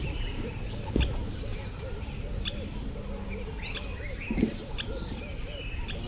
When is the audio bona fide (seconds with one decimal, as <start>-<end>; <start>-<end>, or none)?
0.0-6.1